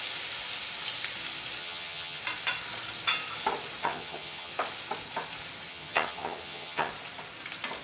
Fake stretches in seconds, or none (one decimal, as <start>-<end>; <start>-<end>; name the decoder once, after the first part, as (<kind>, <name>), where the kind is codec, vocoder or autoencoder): 1.6-2.2 (vocoder, HiFi-GAN); 3.8-4.5; 5.7-6.9